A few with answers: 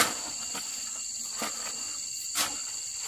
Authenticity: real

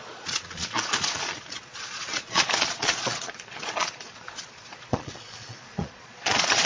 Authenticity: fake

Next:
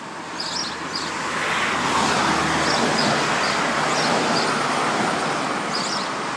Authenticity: real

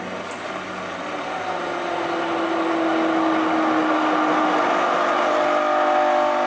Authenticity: real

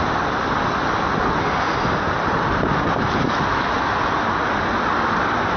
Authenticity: real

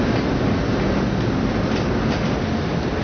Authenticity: real